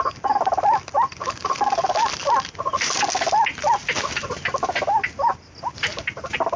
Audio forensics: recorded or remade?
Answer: recorded